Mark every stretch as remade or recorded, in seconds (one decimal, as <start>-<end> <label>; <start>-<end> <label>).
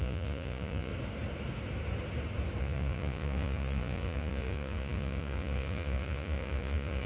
0.0-0.9 remade; 0.9-2.6 recorded; 2.6-7.1 remade